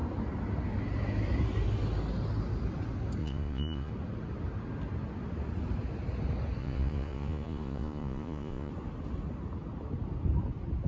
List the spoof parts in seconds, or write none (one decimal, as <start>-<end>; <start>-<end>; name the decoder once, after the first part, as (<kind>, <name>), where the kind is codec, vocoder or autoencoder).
3.2-3.9 (vocoder, Vocos); 6.6-8.7